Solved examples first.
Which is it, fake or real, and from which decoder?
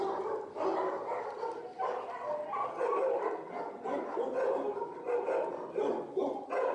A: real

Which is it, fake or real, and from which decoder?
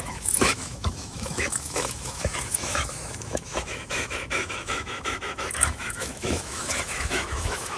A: fake, autoencoder, DAC-VAE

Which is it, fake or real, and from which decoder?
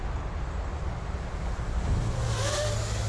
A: real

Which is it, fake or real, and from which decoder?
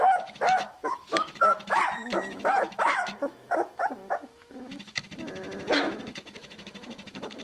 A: fake, autoencoder, DAC-VAE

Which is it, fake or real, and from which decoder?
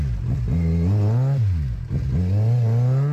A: real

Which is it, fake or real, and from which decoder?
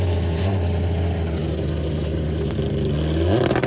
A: real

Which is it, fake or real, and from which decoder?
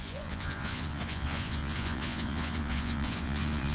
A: fake, vocoder, Vocos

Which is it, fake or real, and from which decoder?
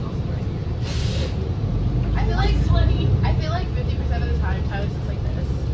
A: real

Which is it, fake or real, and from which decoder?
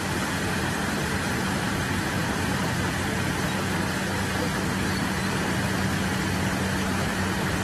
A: real